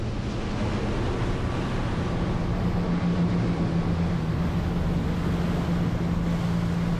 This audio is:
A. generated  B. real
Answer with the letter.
B